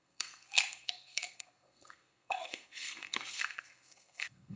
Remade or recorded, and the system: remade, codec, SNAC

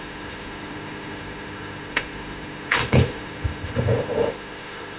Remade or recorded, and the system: remade, autoencoder, DAC-VAE